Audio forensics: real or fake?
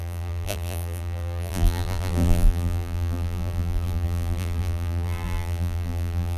fake